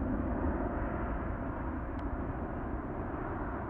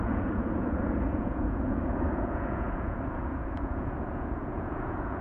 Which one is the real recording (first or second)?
first